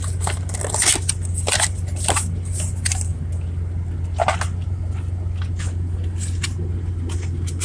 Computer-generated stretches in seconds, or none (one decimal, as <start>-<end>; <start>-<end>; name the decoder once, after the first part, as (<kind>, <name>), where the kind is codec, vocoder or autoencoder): none